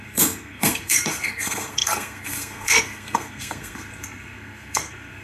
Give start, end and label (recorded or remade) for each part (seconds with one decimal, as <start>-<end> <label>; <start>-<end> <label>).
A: 0.0-5.2 remade